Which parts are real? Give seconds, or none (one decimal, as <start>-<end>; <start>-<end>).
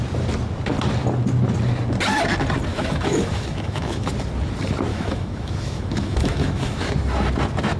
0.0-2.7; 4.1-4.9; 6.9-7.8